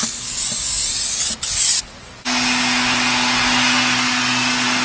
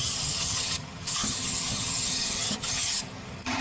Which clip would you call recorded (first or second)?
first